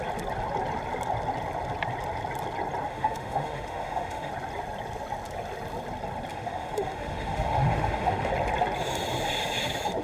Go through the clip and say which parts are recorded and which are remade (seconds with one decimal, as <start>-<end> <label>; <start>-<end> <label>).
0.0-2.9 recorded; 2.9-4.3 remade; 4.3-6.3 recorded; 6.3-8.3 remade; 8.3-10.0 recorded